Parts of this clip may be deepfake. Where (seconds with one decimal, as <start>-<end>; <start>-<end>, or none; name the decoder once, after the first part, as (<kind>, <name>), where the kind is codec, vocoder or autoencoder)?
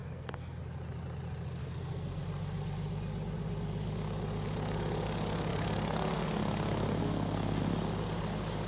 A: 0.0-0.6 (codec, SNAC); 1.6-2.2; 7.0-7.6